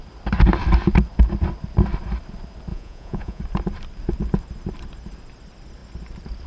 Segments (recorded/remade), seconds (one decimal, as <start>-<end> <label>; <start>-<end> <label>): 0.0-2.7 recorded; 2.7-3.4 remade; 3.4-6.5 recorded